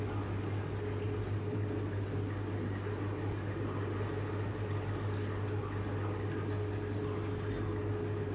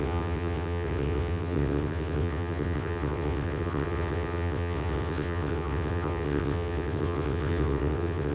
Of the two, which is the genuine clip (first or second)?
first